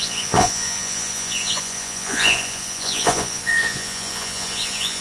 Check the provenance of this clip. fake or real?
fake